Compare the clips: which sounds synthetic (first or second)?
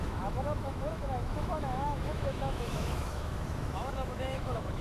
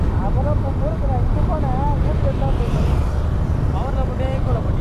first